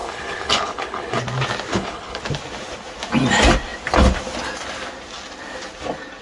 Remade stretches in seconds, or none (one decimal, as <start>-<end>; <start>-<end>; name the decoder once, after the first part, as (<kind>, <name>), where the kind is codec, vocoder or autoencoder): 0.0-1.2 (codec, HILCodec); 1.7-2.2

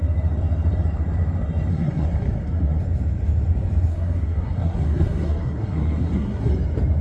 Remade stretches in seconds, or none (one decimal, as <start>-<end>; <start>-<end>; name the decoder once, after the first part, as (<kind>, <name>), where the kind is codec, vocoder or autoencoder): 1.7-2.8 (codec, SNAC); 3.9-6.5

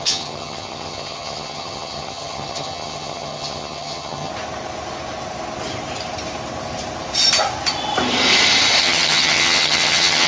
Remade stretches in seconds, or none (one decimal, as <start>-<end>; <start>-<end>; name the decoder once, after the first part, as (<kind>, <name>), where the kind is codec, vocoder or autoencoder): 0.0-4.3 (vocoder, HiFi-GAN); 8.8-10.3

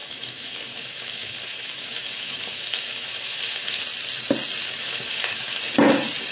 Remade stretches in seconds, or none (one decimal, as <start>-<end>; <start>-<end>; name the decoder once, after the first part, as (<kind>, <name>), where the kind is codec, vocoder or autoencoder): 0.0-3.8 (autoencoder, DAC-VAE); 4.6-5.6

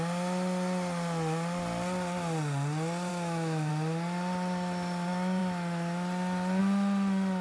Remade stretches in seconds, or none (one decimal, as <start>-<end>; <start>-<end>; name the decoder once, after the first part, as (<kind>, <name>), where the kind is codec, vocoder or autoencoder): 3.1-3.7 (autoencoder, DAC-VAE)

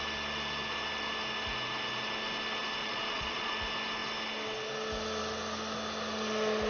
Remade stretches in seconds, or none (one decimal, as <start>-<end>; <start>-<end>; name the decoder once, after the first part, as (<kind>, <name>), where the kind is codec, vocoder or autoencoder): 2.8-3.5 (vocoder, Vocos)